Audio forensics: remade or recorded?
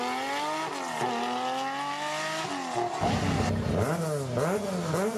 recorded